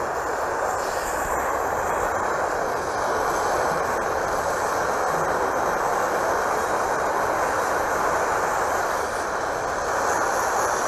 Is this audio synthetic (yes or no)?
no